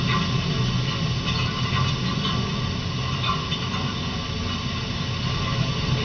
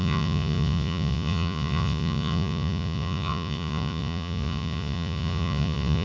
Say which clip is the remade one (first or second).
second